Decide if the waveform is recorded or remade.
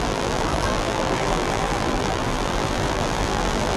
remade